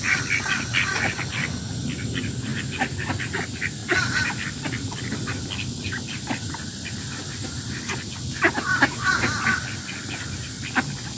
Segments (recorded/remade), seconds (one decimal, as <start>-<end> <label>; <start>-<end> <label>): 0.0-11.2 recorded